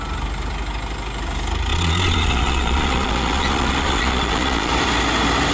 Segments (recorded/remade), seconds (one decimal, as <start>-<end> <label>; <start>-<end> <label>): 0.0-1.7 recorded; 1.7-4.7 remade; 4.7-5.5 recorded